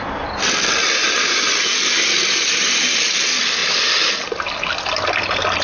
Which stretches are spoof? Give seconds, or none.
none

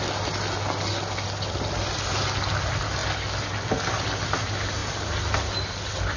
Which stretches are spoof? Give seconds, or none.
none